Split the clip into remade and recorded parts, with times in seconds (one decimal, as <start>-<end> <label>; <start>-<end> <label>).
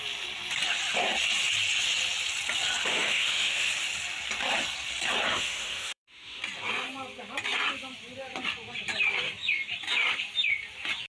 0.0-2.9 recorded; 2.9-3.7 remade; 3.7-5.3 recorded; 5.3-6.4 remade; 6.4-11.1 recorded